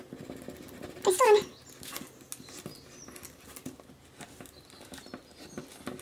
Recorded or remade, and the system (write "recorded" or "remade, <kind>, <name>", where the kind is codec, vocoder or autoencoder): recorded